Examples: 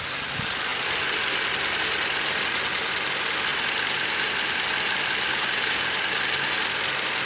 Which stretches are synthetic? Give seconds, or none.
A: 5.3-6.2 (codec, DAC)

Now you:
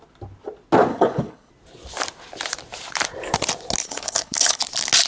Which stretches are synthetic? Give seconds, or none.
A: 0.9-1.5 (codec, HILCodec); 3.8-4.6

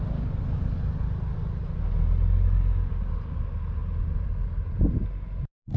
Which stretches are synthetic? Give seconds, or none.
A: none

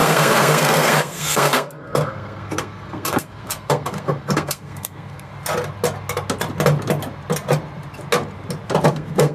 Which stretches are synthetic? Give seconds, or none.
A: 0.0-5.3 (codec, SNAC); 8.9-9.3

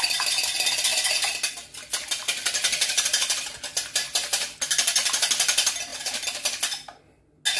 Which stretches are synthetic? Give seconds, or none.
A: none